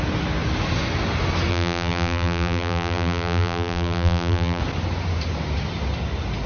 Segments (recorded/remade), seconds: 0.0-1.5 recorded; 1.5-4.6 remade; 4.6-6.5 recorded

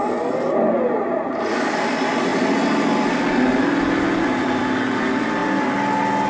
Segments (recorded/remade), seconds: 0.0-2.3 recorded; 2.3-4.6 remade; 4.6-6.3 recorded

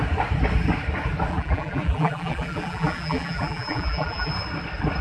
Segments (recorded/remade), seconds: 0.0-1.3 recorded; 1.3-4.3 remade; 4.3-5.0 recorded

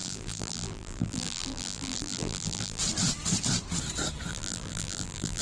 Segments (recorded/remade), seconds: 0.0-2.8 remade; 2.8-4.3 recorded; 4.3-5.4 remade

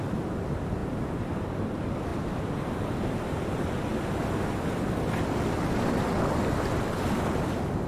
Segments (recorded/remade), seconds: 0.0-0.8 recorded; 0.8-1.4 remade; 1.4-7.9 recorded